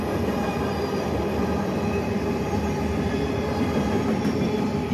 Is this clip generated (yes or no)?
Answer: no